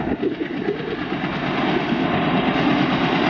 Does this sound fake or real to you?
real